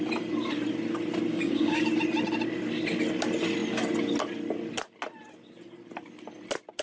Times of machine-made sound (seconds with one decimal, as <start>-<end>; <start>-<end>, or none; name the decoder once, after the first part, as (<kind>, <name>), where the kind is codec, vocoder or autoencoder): 1.3-1.8 (codec, DAC)